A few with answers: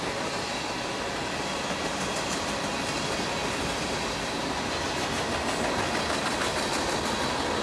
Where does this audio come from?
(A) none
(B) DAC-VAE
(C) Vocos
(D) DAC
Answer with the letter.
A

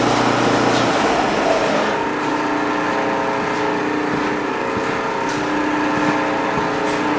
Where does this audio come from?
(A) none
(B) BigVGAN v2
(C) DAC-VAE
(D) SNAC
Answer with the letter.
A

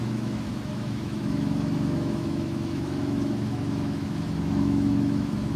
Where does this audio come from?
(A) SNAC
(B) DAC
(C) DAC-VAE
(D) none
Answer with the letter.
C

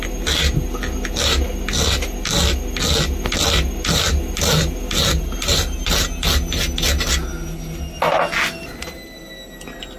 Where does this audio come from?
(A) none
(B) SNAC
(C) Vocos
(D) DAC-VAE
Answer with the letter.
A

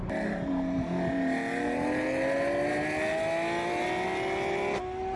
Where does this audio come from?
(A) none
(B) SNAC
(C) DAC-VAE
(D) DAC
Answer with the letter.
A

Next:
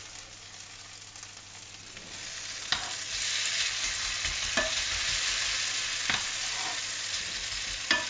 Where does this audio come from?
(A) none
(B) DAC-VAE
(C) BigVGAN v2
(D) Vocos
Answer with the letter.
A